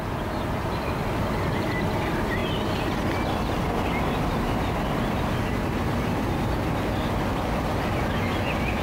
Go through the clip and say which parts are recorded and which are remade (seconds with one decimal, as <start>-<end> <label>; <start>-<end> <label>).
0.0-8.8 recorded